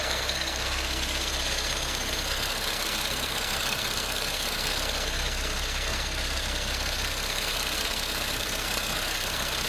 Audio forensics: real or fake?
fake